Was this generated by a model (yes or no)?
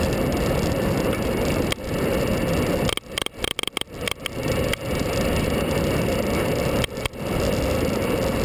no